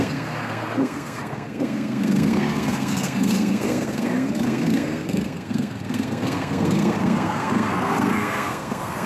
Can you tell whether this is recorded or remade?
remade